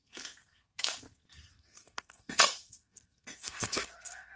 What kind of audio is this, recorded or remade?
remade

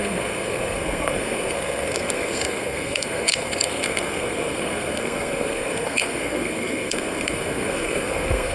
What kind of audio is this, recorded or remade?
remade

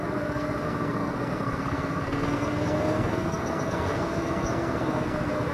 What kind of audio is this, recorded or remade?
remade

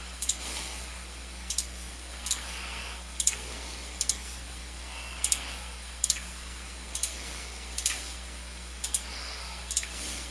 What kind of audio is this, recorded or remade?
remade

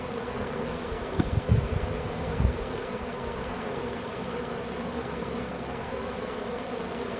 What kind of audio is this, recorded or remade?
remade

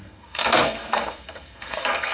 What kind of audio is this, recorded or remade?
remade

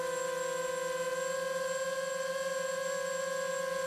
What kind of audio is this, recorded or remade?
recorded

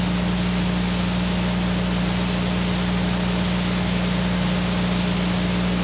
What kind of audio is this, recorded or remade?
recorded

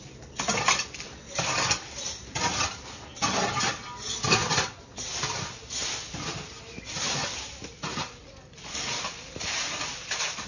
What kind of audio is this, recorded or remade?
recorded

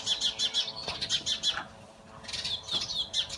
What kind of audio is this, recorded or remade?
recorded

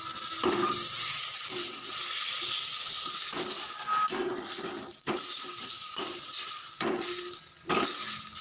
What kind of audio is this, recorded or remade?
recorded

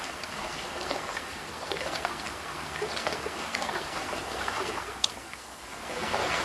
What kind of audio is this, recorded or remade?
remade